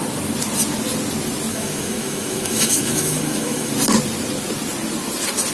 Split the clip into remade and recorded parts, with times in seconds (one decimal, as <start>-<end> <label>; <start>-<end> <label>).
0.0-1.5 recorded; 1.5-3.7 remade; 3.7-5.5 recorded